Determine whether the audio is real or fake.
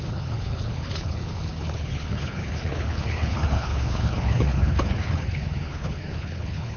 fake